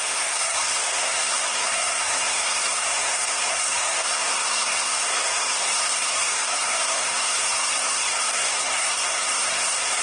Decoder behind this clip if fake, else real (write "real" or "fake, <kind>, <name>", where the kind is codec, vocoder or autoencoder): fake, codec, SNAC